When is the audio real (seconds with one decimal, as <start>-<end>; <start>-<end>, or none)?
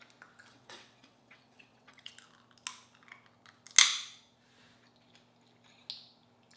0.0-0.5; 2.1-6.6